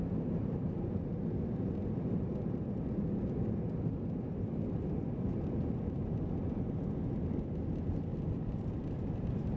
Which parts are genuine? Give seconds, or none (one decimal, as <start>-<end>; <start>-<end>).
0.0-8.1